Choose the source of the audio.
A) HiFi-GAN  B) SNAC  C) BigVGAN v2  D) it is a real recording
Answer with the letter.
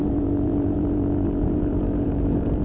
C